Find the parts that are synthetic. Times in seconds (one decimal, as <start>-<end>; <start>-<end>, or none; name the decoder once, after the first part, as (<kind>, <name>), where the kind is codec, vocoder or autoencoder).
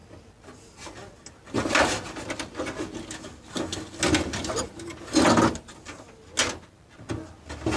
none